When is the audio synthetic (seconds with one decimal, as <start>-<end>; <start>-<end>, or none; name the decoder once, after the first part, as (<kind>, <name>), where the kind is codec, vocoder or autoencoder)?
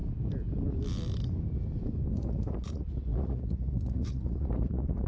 2.1-5.1 (vocoder, Vocos)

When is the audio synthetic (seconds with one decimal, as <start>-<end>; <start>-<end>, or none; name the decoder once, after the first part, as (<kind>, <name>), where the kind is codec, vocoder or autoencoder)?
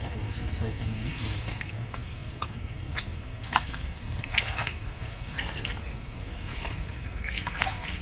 0.0-8.0 (codec, SNAC)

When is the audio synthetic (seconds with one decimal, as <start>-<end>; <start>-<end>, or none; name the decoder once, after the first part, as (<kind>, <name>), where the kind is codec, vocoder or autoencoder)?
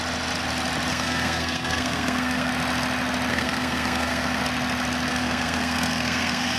0.9-2.5 (codec, SNAC); 3.3-4.4; 5.1-6.6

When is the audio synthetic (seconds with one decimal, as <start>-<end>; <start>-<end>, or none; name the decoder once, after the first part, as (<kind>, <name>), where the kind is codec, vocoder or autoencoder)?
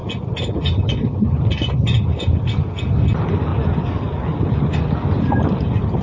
none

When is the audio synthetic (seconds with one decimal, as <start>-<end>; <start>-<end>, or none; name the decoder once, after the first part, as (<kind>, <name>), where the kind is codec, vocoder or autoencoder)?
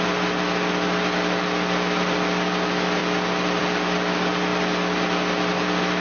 none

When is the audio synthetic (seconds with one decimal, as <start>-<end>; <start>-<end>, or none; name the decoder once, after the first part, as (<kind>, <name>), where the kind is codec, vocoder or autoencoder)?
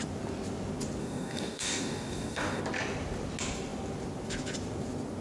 1.0-2.6 (codec, DAC)